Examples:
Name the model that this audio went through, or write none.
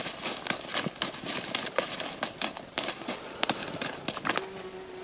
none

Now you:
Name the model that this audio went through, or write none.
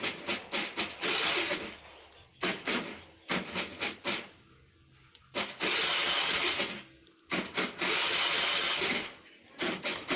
none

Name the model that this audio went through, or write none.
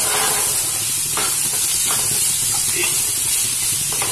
none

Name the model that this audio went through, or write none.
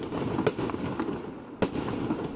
none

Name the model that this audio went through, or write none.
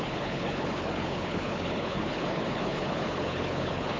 codec, HILCodec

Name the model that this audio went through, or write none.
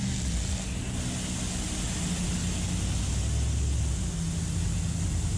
none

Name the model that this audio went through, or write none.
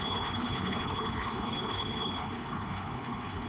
codec, HILCodec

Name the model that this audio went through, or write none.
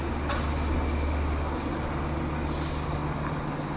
none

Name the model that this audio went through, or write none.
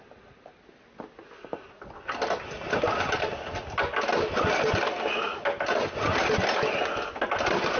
none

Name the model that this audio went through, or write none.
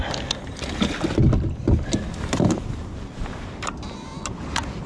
none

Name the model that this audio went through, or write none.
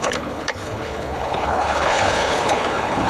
codec, HILCodec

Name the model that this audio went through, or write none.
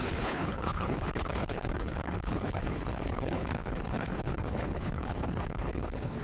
codec, HILCodec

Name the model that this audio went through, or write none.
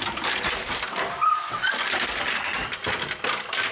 none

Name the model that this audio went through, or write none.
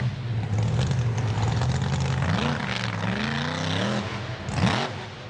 none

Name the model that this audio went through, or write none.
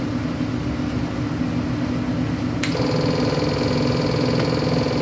none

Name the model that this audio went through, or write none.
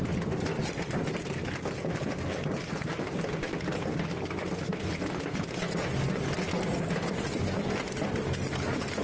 none